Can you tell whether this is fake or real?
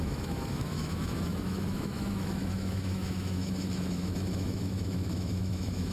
fake